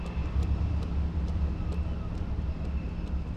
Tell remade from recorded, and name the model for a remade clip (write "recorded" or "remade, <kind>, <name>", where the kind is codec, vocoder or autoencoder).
recorded